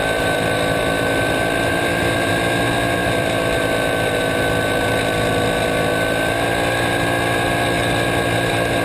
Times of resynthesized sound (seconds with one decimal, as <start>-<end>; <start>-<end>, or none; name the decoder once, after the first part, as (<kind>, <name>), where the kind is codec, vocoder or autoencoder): 0.0-2.3 (vocoder, BigVGAN v2); 3.0-3.6

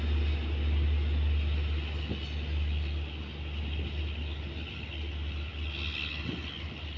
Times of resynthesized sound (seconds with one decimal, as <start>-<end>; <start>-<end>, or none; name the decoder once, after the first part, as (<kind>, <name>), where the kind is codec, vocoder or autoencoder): none

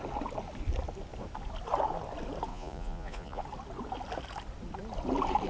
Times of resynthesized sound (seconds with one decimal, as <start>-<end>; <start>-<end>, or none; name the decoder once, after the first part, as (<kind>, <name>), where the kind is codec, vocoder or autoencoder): 2.5-3.4 (vocoder, Vocos)